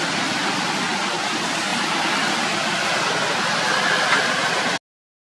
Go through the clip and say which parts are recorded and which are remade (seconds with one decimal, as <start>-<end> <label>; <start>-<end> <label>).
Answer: 0.0-5.2 recorded